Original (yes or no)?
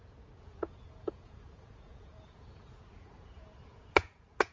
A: no